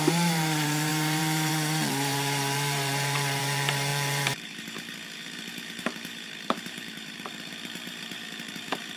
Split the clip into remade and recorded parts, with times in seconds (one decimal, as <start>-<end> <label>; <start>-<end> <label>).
0.0-9.0 remade